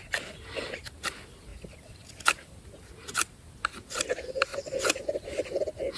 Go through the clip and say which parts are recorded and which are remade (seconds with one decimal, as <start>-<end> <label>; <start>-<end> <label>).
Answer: 0.0-1.5 recorded; 1.5-2.6 remade; 2.6-6.0 recorded

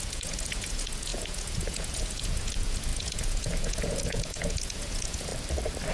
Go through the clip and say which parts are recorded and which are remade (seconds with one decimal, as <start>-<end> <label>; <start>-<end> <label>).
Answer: 0.0-5.3 remade; 5.3-5.9 recorded

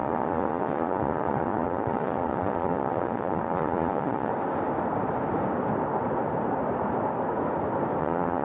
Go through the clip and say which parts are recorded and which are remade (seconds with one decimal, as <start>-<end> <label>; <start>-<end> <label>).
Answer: 0.0-4.3 remade; 4.3-8.0 recorded; 8.0-8.4 remade

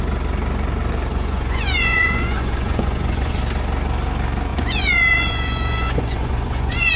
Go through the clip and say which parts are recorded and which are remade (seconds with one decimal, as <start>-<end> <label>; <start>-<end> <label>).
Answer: 0.0-1.1 recorded; 1.1-3.4 remade; 3.4-4.5 recorded; 4.5-7.0 remade

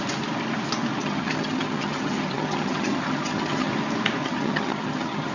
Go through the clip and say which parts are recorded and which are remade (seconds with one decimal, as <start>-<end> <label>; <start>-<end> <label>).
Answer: 0.0-1.0 recorded; 1.0-3.7 remade; 3.7-4.2 recorded; 4.2-5.3 remade

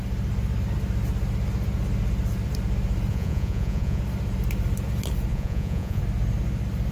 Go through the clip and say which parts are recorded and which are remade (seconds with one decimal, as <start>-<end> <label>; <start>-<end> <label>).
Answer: 0.0-3.1 recorded; 3.1-4.0 remade; 4.0-5.3 recorded; 5.3-6.0 remade; 6.0-6.9 recorded

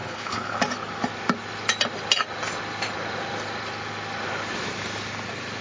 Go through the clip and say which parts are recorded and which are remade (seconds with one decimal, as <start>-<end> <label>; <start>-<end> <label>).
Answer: 0.0-0.6 remade; 0.6-5.6 recorded